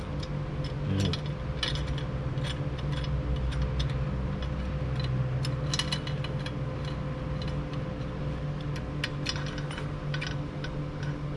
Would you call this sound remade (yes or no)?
no